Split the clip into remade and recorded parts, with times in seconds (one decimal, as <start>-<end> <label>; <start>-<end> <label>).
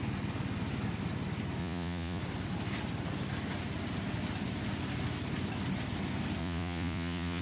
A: 0.0-1.6 recorded; 1.6-2.2 remade; 2.2-6.4 recorded; 6.4-7.4 remade